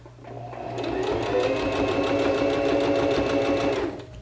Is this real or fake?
real